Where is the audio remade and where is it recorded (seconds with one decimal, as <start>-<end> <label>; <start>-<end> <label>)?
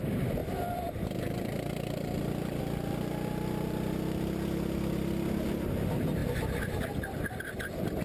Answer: 0.0-0.4 recorded; 0.4-2.6 remade; 2.6-8.0 recorded